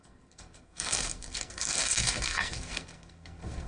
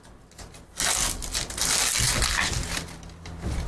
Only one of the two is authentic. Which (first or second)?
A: second